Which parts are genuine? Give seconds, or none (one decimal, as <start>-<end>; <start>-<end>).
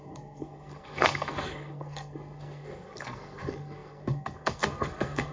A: none